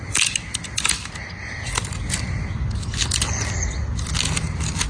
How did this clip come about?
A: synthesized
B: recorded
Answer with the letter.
B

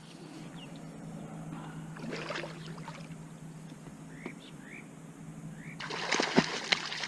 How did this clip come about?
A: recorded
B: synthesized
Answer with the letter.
A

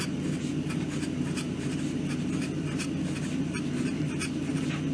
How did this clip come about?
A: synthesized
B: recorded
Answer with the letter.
B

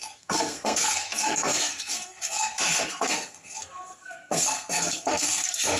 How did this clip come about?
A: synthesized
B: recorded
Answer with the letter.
A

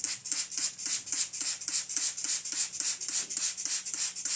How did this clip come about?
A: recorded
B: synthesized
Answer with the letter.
A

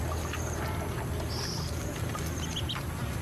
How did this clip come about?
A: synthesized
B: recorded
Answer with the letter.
B